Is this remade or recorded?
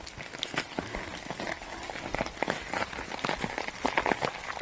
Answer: recorded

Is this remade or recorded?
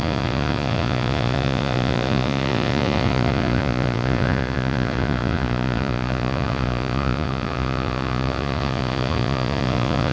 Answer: remade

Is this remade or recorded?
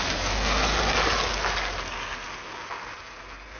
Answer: recorded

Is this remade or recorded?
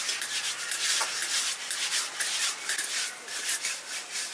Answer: remade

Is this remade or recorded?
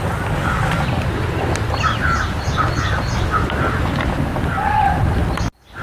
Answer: recorded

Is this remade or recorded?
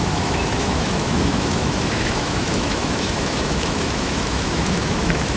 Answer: remade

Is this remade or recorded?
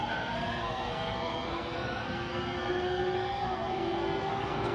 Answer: remade